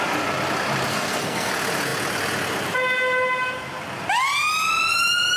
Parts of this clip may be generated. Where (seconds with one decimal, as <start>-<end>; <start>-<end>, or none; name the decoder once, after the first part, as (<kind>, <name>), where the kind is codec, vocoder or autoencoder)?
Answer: 0.9-1.5 (codec, SNAC)